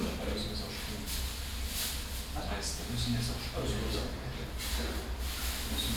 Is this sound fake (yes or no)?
no